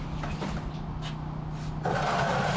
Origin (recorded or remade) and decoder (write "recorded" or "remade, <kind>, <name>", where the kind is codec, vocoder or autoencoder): recorded